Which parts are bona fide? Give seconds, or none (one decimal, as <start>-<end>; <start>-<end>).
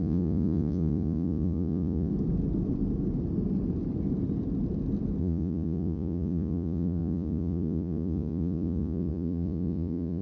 2.1-5.2